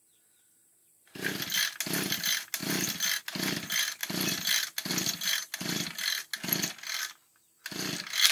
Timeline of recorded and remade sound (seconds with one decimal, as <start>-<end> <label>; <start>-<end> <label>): 0.0-0.8 recorded; 0.8-1.8 remade; 1.8-4.0 recorded; 4.0-4.9 remade; 4.9-8.3 recorded